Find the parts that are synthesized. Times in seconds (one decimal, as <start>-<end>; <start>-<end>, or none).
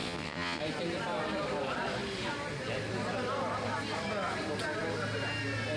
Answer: 0.0-0.6